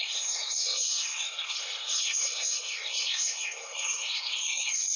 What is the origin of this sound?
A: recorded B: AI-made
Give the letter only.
B